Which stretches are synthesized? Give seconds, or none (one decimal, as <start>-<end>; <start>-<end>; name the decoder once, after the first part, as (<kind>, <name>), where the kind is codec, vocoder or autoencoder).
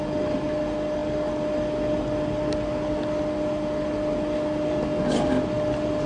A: none